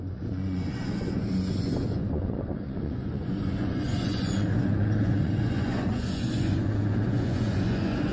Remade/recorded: remade